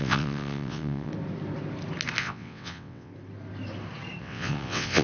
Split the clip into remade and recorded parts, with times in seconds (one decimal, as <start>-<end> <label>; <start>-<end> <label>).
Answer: 0.0-1.1 remade; 1.1-2.2 recorded; 2.2-3.1 remade; 3.1-4.2 recorded; 4.2-5.0 remade